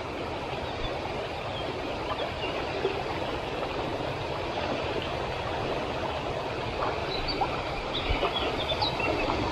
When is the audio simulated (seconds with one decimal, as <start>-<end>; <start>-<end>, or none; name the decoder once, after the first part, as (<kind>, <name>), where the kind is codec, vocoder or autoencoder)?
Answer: 1.5-2.2 (vocoder, BigVGAN v2); 3.9-5.0; 7.0-7.8